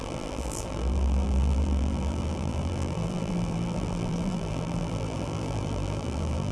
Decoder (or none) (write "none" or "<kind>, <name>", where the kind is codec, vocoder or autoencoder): vocoder, BigVGAN v2